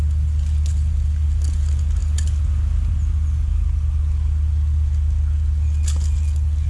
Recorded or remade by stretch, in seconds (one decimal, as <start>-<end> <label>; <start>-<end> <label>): 0.0-6.7 recorded